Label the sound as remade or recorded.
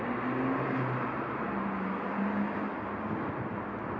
recorded